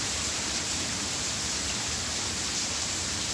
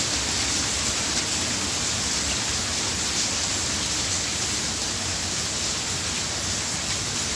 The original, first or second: second